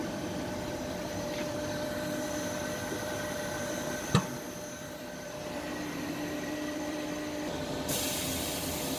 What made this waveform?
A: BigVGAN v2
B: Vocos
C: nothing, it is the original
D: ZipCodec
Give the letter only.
A